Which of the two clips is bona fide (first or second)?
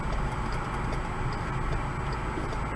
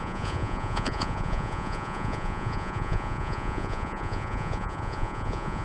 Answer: first